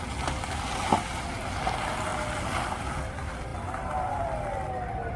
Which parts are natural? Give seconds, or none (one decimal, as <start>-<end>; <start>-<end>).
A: 0.0-5.2